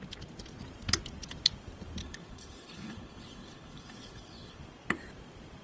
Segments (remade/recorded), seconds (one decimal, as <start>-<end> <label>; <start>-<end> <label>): 0.0-2.0 recorded; 2.0-4.6 remade; 4.6-5.6 recorded